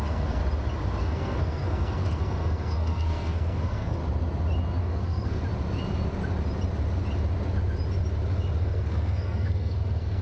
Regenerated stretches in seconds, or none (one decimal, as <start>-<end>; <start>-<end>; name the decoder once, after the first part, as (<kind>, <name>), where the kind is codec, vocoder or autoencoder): 0.0-0.4 (codec, SNAC); 1.0-4.0; 4.8-5.4; 8.6-10.2